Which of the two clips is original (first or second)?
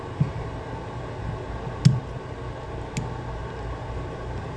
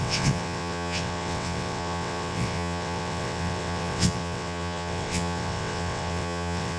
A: first